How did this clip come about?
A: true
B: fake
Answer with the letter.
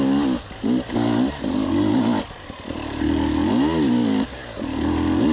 A